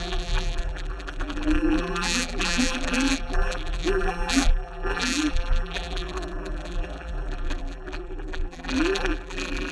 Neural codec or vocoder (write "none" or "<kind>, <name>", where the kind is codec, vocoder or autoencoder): vocoder, BigVGAN v2